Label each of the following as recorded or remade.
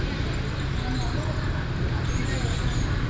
recorded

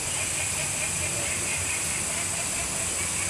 remade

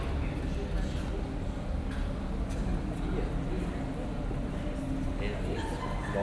recorded